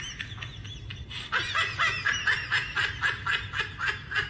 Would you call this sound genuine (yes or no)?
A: yes